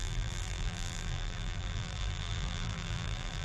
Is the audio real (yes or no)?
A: no